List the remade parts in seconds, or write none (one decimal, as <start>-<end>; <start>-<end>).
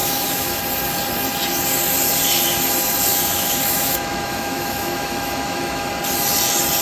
0.0-0.6; 3.1-5.9